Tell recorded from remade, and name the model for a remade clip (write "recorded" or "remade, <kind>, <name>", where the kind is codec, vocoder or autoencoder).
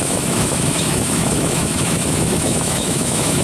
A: remade, autoencoder, DAC-VAE